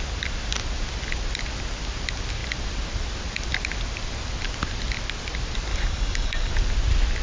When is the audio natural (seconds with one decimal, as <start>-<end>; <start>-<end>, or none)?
0.0-5.7; 6.5-7.2